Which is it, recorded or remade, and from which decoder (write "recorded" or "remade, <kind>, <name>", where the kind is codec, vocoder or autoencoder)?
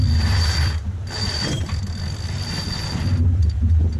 recorded